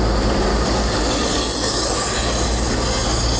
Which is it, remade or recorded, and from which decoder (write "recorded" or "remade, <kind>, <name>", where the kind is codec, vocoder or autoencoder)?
recorded